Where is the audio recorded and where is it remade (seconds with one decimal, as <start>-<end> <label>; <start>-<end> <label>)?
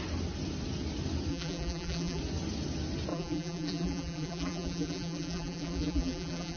0.0-1.3 recorded; 1.3-2.2 remade; 2.2-3.1 recorded; 3.1-6.6 remade